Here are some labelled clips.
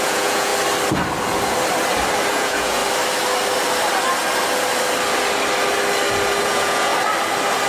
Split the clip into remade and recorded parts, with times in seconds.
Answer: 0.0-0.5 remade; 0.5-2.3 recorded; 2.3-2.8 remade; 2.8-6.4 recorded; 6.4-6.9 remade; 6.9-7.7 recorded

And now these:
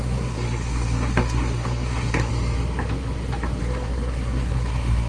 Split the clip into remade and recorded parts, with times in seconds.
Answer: 0.0-2.3 remade; 2.3-3.6 recorded; 3.6-5.1 remade

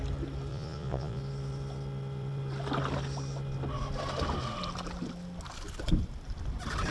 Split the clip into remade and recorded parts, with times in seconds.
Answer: 0.0-0.5 recorded; 0.5-1.2 remade; 1.2-6.9 recorded

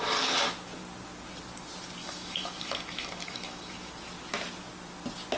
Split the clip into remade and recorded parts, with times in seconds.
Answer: 0.0-2.0 recorded; 2.0-3.9 remade; 3.9-5.4 recorded

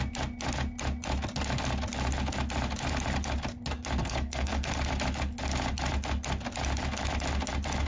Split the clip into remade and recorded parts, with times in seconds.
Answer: 0.0-4.0 recorded; 4.0-4.7 remade; 4.7-7.9 recorded

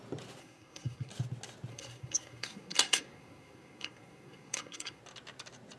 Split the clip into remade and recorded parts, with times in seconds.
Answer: 0.0-0.4 recorded; 0.4-1.1 remade; 1.1-1.7 recorded; 1.7-5.0 remade; 5.0-5.8 recorded

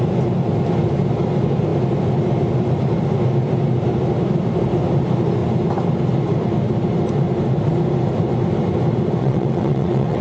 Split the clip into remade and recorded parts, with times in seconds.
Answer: 0.0-9.2 recorded; 9.2-10.2 remade

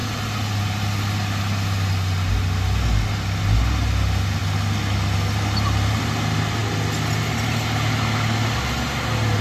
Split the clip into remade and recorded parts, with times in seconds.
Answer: 0.0-9.4 recorded